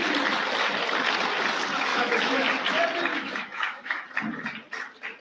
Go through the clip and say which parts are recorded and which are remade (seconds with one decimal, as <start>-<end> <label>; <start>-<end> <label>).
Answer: 0.0-1.9 recorded; 1.9-2.5 remade; 2.5-3.1 recorded; 3.1-4.0 remade; 4.0-5.2 recorded

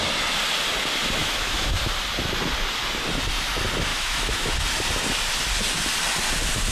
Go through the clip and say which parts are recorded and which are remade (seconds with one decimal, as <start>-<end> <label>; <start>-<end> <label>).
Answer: 0.0-1.2 recorded; 1.2-1.9 remade; 1.9-3.9 recorded; 3.9-4.6 remade; 4.6-6.7 recorded

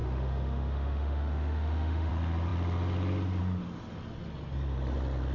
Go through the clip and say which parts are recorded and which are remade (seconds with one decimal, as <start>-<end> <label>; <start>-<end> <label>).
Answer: 0.0-2.1 remade; 2.1-5.3 recorded

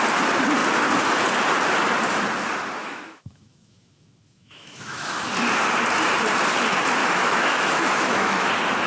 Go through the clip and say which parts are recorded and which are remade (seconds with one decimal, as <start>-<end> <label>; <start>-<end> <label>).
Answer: 0.0-2.8 recorded; 2.8-5.3 remade; 5.3-7.0 recorded; 7.0-8.5 remade; 8.5-8.9 recorded

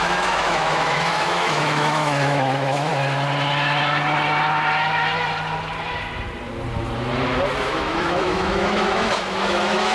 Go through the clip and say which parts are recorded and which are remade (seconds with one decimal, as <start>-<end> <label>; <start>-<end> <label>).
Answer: 0.0-2.9 remade; 2.9-7.6 recorded; 7.6-9.9 remade